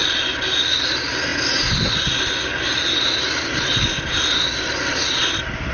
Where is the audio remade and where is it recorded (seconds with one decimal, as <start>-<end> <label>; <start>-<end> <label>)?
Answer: 0.0-5.7 recorded